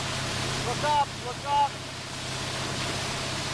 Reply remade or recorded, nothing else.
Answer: recorded